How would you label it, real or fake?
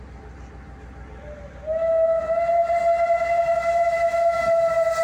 real